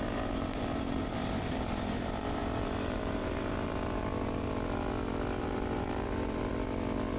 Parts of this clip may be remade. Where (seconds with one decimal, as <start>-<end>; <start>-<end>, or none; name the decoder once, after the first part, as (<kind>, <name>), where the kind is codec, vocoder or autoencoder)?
0.0-4.1 (vocoder, BigVGAN v2); 5.4-6.5